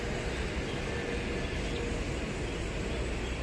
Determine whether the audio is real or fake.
real